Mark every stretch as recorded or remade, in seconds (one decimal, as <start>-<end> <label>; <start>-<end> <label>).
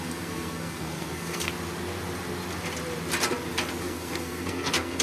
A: 0.0-1.5 remade; 1.5-3.8 recorded; 3.8-5.0 remade